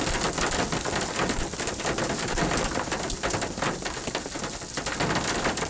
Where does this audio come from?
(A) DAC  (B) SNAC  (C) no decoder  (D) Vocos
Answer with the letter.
C